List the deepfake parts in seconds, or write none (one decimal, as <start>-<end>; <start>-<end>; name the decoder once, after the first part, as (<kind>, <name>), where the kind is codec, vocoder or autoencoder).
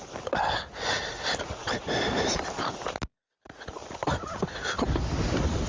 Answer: 1.6-2.8 (vocoder, BigVGAN v2)